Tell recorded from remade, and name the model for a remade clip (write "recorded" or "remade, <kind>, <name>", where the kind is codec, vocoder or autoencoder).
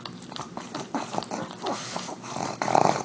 recorded